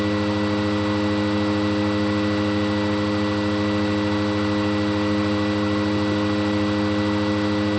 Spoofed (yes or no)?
no